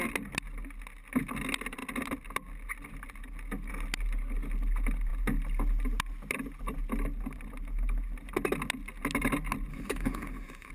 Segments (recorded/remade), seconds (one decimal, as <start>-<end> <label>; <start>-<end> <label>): 0.0-9.7 recorded; 9.7-10.7 remade